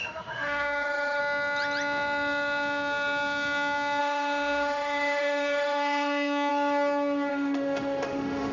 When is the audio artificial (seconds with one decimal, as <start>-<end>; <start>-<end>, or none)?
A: 0.0-1.2; 4.0-6.5; 7.3-8.5

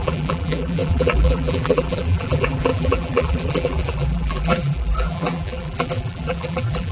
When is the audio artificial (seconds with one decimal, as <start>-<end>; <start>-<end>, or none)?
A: 0.0-6.9

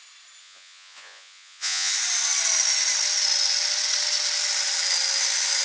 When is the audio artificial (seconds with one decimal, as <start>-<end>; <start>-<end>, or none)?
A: 0.4-1.9